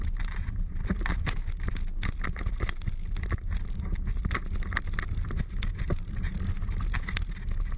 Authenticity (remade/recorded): recorded